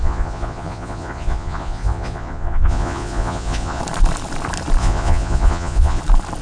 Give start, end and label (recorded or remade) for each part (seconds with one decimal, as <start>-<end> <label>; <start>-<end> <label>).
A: 0.0-3.8 remade; 3.8-4.8 recorded; 4.8-6.0 remade; 6.0-6.4 recorded